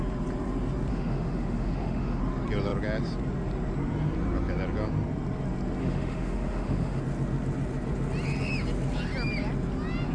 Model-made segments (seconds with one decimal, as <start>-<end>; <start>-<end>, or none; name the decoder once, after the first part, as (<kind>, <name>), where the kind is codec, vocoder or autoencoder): 0.9-2.2 (autoencoder, DAC-VAE); 5.8-7.0